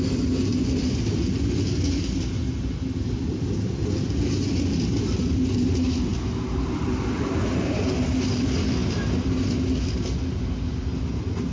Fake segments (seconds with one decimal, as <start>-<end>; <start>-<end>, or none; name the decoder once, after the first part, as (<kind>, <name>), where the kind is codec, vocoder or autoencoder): none